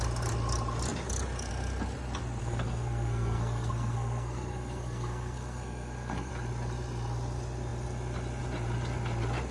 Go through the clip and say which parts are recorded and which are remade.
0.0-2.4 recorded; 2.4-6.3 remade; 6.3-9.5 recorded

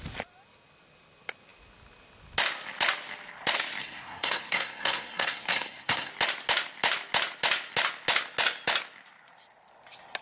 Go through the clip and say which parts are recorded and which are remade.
0.0-3.8 recorded; 3.8-6.1 remade; 6.1-10.2 recorded

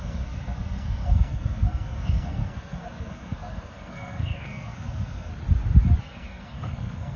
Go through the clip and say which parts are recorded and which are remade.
0.0-5.3 remade; 5.3-6.0 recorded; 6.0-7.2 remade

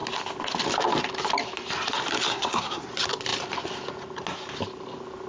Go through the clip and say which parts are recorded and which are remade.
0.0-2.3 recorded; 2.3-2.9 remade; 2.9-5.3 recorded

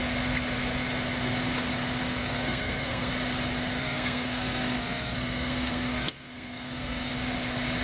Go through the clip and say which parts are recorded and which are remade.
0.0-2.2 recorded; 2.2-3.1 remade; 3.1-3.8 recorded; 3.8-7.1 remade; 7.1-7.8 recorded

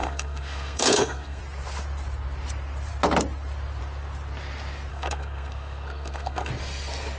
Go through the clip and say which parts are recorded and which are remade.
0.0-1.4 remade; 1.4-4.9 recorded; 4.9-6.5 remade; 6.5-7.2 recorded

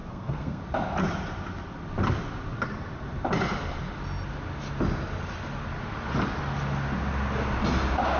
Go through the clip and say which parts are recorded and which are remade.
0.0-0.6 remade; 0.6-8.2 recorded

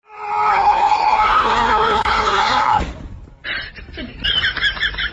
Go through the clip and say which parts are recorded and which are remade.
0.0-0.5 recorded; 0.5-2.8 remade; 2.8-5.1 recorded